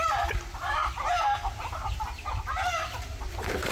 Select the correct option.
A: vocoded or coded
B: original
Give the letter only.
B